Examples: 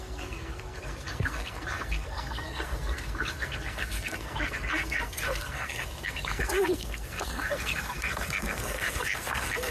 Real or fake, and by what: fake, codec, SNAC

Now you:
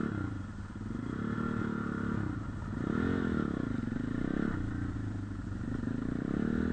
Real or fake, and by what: real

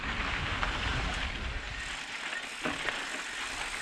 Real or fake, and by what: real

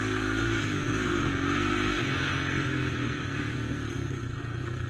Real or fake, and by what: fake, codec, SNAC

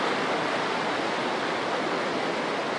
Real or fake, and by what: real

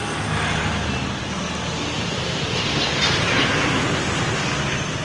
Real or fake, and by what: real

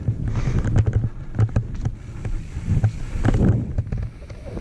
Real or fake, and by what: real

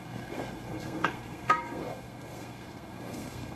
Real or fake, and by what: fake, codec, SNAC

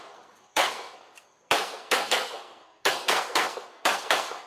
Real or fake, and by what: fake, codec, SNAC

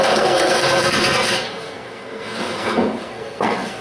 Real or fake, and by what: fake, codec, SNAC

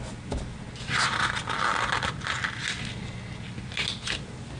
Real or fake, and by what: real